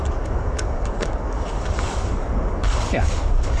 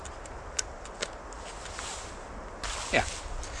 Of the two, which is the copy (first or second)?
first